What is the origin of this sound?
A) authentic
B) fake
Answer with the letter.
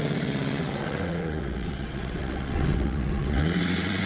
B